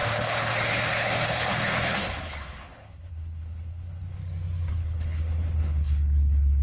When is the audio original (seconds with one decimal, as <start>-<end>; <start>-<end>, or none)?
4.2-4.7